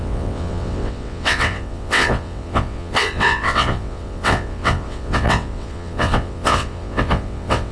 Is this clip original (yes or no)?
no